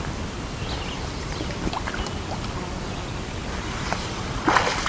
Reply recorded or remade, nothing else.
recorded